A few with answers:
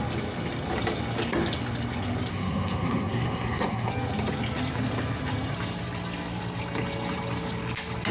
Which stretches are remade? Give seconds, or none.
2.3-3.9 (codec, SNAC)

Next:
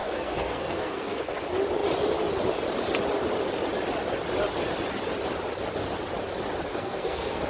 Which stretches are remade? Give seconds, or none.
0.0-1.3 (codec, SNAC); 6.7-7.5

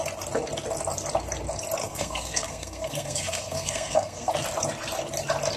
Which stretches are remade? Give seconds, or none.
1.8-4.3 (codec, SNAC)

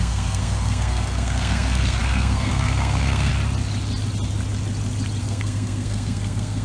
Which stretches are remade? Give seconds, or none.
0.0-3.3 (codec, SNAC); 5.2-6.6

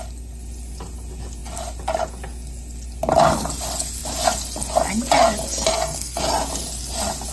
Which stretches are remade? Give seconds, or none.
5.7-6.2 (codec, SNAC)

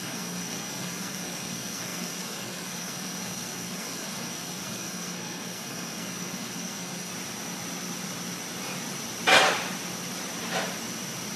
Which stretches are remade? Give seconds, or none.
0.0-7.1 (codec, SNAC)